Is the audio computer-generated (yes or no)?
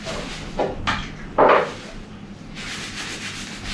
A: no